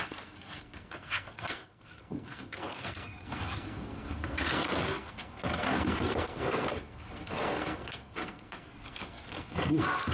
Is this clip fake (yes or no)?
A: yes